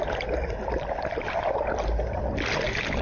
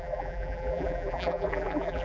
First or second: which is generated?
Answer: second